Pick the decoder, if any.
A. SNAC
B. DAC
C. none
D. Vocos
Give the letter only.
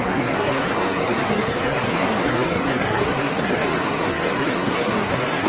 A